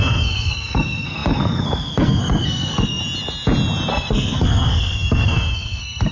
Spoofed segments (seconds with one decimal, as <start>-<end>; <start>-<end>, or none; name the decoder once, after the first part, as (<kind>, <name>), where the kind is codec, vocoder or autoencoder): 0.0-3.0 (codec, SNAC); 3.9-6.1